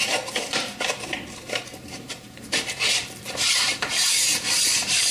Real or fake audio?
fake